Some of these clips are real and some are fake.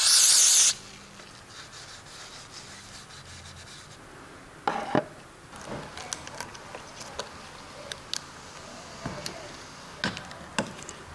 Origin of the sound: real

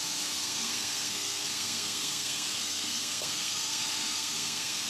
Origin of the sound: fake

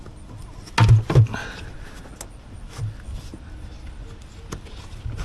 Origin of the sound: real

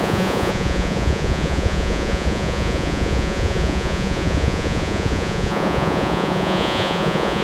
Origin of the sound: fake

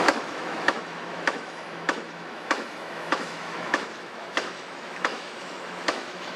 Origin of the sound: fake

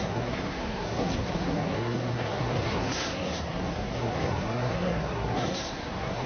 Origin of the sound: fake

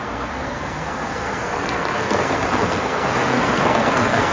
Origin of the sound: fake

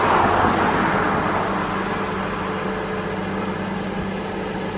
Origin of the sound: real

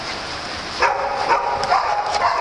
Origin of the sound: fake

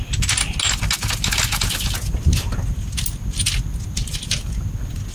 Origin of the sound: real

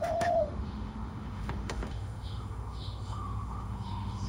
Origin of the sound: fake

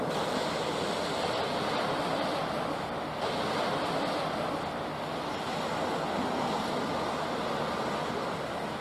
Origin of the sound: real